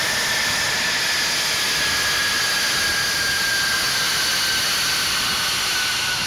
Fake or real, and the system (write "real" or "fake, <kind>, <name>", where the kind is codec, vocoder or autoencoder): real